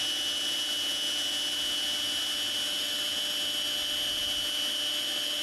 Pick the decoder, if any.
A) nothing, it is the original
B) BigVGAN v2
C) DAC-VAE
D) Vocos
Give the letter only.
A